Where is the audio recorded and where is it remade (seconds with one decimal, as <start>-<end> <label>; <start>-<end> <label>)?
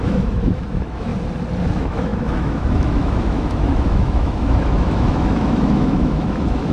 0.0-1.1 remade; 1.1-1.7 recorded; 1.7-6.7 remade